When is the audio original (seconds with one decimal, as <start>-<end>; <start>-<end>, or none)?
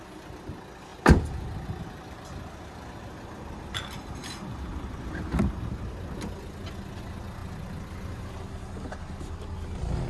0.0-10.1